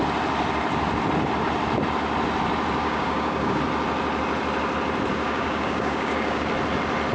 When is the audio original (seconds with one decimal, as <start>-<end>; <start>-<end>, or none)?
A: 0.0-2.8; 3.6-5.1; 6.5-7.1